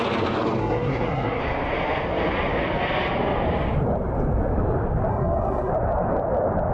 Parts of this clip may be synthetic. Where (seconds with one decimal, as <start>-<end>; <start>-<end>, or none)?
0.6-1.4; 5.1-5.7